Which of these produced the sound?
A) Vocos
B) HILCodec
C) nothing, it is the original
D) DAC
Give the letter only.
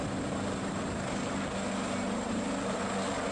C